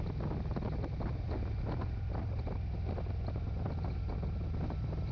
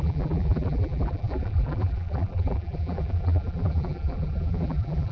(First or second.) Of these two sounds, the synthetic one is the second